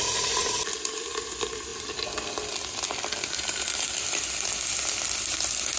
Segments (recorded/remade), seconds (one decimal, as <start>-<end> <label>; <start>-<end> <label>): 0.0-5.8 recorded

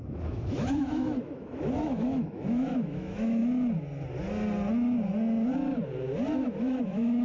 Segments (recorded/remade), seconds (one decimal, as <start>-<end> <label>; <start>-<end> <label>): 0.0-3.4 remade; 3.4-6.4 recorded; 6.4-7.2 remade

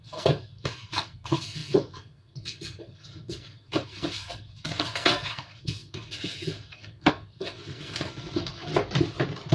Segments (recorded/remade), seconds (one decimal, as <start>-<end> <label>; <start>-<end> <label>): 0.0-8.7 remade; 8.7-9.5 recorded

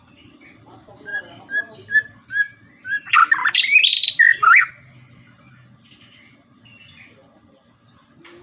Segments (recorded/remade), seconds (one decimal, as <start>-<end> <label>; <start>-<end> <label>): 0.0-3.2 recorded; 3.2-4.2 remade; 4.2-8.4 recorded

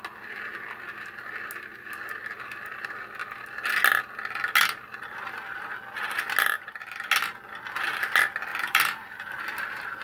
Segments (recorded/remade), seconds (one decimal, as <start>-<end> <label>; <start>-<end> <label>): 0.0-8.5 recorded; 8.5-9.4 remade; 9.4-10.0 recorded